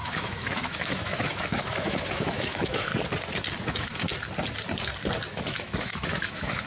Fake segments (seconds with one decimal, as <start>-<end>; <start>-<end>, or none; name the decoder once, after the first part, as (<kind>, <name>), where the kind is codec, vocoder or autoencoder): 0.0-2.9 (autoencoder, DAC-VAE); 3.6-4.1; 5.3-6.7